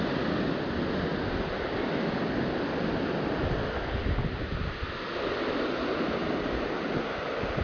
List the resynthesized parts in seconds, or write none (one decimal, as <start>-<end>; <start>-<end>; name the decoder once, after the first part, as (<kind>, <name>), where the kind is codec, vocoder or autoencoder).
none